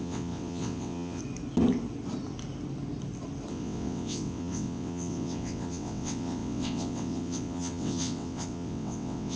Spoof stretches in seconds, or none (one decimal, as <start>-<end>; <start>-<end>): 0.0-1.2; 3.5-9.4